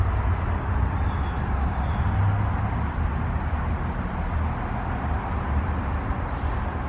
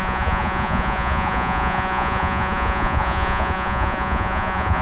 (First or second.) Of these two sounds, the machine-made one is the second